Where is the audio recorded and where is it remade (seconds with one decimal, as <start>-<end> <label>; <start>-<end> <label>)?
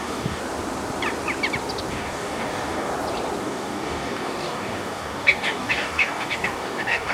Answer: 0.0-0.4 remade; 0.4-1.9 recorded; 1.9-2.9 remade; 2.9-3.4 recorded; 3.4-7.1 remade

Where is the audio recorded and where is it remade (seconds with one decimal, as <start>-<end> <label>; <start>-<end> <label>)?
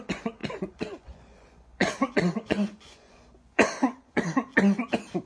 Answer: 0.0-4.5 remade; 4.5-5.3 recorded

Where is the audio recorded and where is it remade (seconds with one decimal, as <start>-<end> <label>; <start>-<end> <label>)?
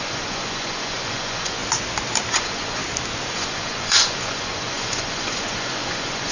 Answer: 0.0-1.6 remade; 1.6-2.3 recorded; 2.3-2.8 remade; 2.8-3.3 recorded; 3.3-6.3 remade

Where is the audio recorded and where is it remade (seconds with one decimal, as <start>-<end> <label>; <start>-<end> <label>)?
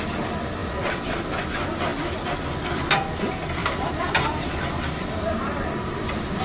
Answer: 0.0-0.6 recorded; 0.6-1.2 remade; 1.2-3.6 recorded; 3.6-6.4 remade